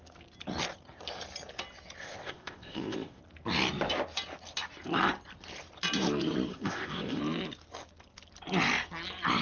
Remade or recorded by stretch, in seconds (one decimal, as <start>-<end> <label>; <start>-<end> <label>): 0.0-2.0 recorded; 2.0-3.2 remade; 3.2-6.5 recorded; 6.5-7.2 remade; 7.2-9.4 recorded

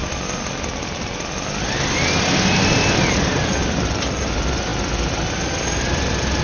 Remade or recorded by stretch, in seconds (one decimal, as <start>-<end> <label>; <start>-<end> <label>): 0.0-6.4 recorded